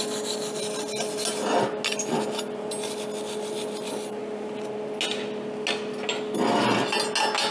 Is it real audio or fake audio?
real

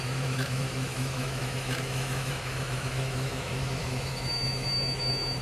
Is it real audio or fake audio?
fake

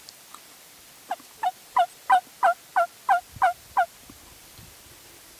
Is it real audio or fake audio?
real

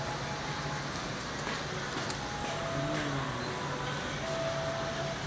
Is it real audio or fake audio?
real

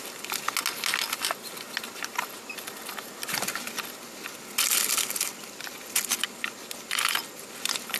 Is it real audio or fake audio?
real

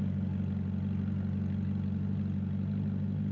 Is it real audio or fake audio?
real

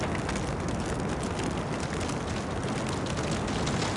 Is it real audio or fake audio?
real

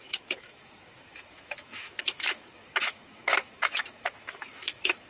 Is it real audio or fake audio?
fake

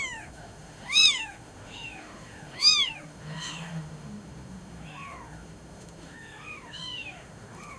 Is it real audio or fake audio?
fake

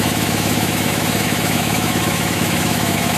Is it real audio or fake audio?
fake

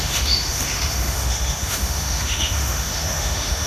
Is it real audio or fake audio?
fake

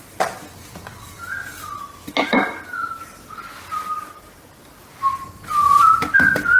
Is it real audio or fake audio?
real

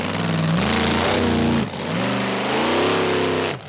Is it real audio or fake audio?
real